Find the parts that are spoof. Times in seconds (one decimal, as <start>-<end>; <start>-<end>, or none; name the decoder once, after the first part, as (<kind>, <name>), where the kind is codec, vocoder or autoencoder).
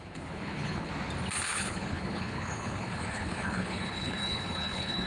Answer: 0.0-0.9 (codec, HILCodec); 1.5-5.1